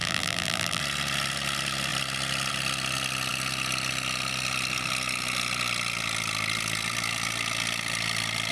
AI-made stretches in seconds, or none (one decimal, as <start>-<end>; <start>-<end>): 0.0-0.8